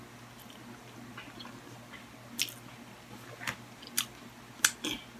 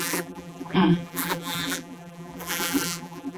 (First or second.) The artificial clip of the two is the second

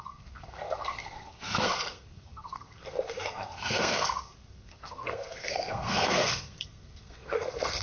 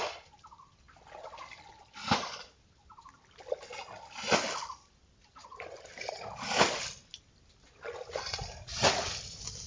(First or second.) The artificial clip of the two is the first